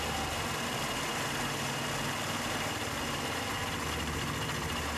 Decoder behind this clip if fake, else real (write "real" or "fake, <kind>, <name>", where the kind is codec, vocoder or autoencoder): real